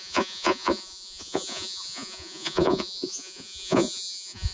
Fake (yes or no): yes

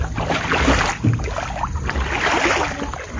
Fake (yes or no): no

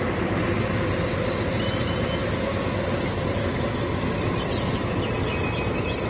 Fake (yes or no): no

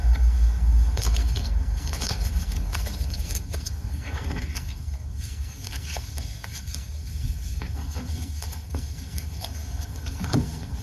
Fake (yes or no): yes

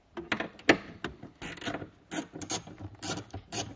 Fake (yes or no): no